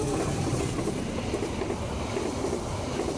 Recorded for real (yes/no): no